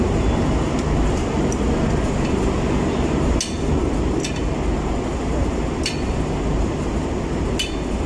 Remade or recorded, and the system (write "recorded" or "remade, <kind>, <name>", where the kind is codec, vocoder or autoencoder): recorded